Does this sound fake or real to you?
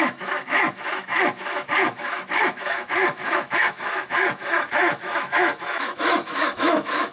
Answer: fake